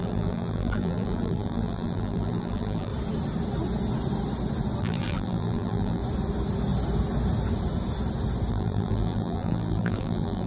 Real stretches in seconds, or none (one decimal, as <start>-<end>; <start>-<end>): 2.9-4.8; 6.0-8.5